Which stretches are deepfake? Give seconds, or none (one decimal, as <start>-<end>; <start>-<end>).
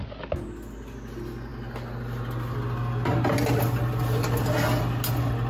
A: none